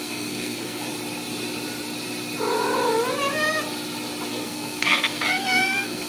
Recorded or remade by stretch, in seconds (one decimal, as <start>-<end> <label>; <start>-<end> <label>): 0.0-0.9 remade; 0.9-4.3 recorded; 4.3-6.1 remade